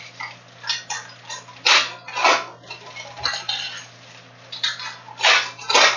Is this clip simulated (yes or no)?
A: no